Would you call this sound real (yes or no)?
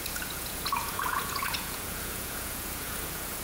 no